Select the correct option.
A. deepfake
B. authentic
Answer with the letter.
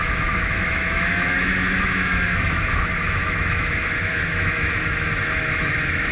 A